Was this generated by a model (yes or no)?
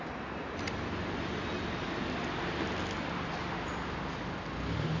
no